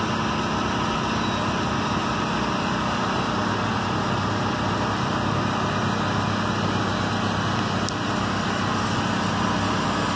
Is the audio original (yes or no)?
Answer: yes